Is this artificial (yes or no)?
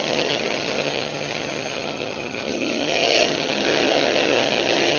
yes